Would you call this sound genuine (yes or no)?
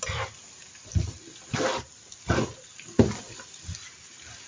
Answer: yes